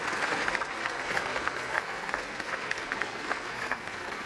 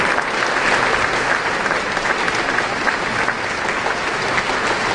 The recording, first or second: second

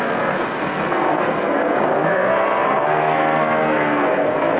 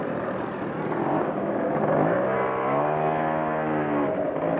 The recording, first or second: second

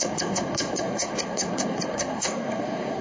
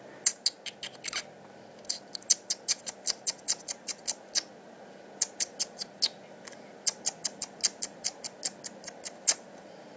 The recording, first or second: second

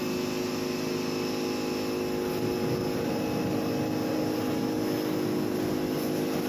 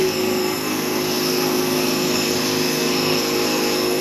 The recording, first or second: first